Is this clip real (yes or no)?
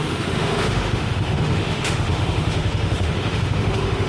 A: no